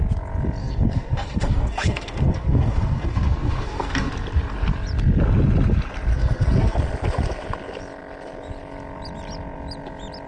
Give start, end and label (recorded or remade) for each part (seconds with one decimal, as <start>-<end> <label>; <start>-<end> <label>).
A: 0.0-0.6 recorded; 0.6-4.1 remade; 4.1-6.1 recorded; 6.1-6.8 remade; 6.8-10.3 recorded